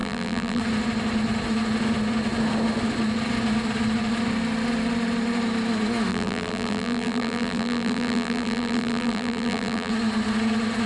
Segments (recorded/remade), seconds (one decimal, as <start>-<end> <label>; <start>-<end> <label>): 0.0-0.6 remade; 0.6-6.1 recorded; 6.1-9.9 remade; 9.9-10.9 recorded